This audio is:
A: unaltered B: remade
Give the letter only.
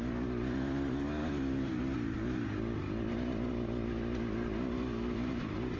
A